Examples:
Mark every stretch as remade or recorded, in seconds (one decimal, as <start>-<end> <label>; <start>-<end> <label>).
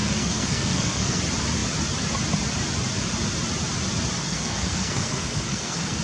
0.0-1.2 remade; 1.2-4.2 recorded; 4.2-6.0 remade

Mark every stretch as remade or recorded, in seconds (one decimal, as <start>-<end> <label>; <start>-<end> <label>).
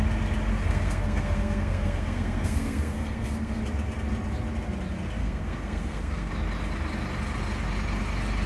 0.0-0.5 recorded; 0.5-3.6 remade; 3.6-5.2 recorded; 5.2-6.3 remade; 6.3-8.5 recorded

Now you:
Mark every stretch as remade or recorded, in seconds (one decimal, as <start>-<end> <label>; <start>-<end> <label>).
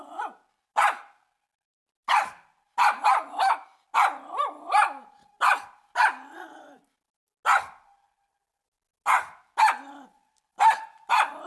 0.0-11.5 recorded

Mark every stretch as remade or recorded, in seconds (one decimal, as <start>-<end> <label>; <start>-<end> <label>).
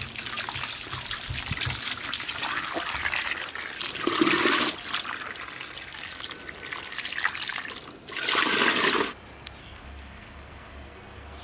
0.0-9.6 recorded; 9.6-11.4 remade